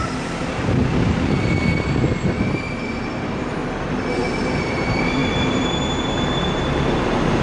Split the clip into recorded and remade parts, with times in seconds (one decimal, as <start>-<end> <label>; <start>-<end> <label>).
0.0-0.8 remade; 0.8-2.9 recorded; 2.9-3.6 remade; 3.6-4.5 recorded; 4.5-7.4 remade